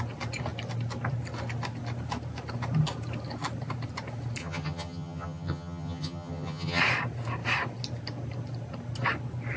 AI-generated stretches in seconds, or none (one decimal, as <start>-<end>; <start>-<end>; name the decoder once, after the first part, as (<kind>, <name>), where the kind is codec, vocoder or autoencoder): 4.4-6.8 (vocoder, HiFi-GAN)